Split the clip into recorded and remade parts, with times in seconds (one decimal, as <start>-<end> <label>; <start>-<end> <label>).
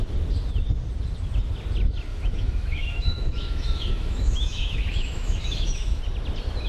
0.0-2.1 recorded; 2.1-6.0 remade; 6.0-6.7 recorded